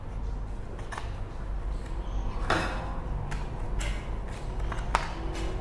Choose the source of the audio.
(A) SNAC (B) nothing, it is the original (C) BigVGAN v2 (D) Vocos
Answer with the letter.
B